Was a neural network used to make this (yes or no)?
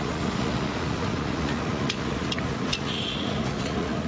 yes